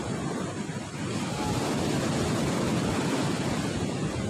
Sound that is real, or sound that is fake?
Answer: real